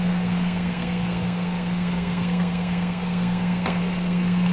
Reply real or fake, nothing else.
fake